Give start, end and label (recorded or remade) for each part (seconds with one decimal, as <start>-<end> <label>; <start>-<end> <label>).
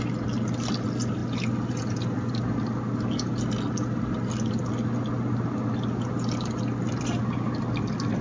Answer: 0.0-8.2 recorded